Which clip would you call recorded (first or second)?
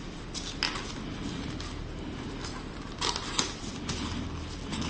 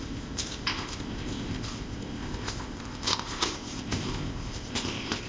first